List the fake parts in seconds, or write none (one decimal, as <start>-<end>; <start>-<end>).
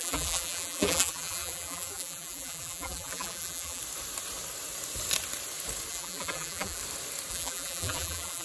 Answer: 0.0-3.8; 5.9-6.8; 7.3-8.4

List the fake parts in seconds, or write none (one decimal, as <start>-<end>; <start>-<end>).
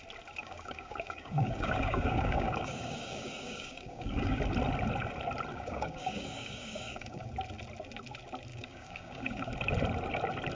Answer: 0.4-4.4; 5.5-7.3; 8.5-9.5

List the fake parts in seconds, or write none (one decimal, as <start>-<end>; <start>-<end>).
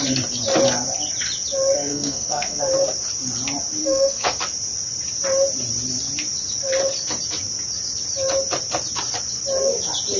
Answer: 1.9-2.6; 3.8-4.4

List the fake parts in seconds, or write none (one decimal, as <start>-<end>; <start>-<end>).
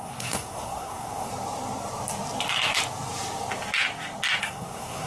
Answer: 0.0-1.3; 4.4-5.1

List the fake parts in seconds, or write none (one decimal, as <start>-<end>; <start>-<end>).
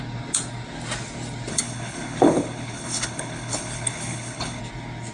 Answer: 1.5-4.6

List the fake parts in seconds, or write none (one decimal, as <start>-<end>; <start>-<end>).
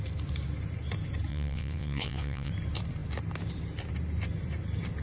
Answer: 1.3-2.5